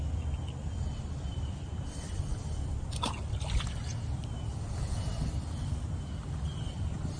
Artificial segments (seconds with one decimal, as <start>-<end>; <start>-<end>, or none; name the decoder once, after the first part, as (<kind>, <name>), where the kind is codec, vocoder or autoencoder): 4.5-5.1 (vocoder, Vocos)